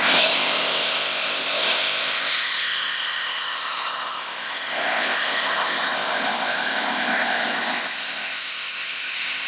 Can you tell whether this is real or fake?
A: fake